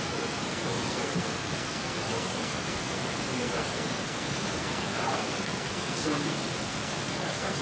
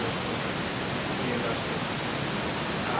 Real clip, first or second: second